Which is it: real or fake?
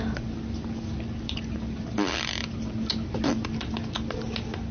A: real